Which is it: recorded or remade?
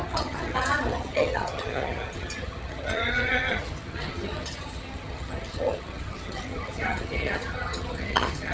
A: remade